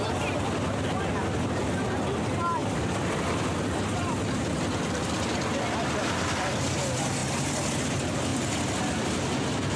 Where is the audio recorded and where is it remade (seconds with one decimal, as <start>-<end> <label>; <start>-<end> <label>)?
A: 0.0-2.6 recorded; 2.6-6.8 remade; 6.8-9.8 recorded